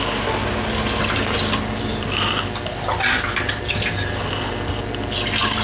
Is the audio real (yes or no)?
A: yes